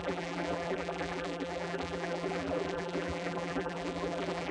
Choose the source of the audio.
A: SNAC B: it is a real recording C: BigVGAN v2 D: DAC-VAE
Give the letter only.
C